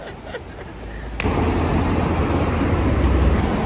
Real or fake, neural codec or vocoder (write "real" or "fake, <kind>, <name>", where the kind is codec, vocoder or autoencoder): real